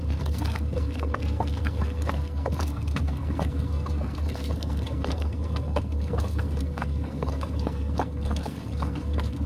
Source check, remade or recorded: remade